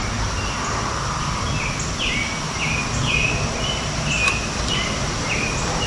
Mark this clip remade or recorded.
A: recorded